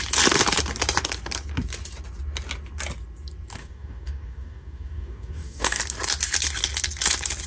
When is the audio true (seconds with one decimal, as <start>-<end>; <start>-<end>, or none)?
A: 0.0-3.6; 5.8-7.5